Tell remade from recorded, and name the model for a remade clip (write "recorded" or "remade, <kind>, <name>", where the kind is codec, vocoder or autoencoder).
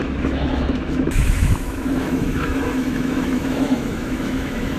remade, autoencoder, DAC-VAE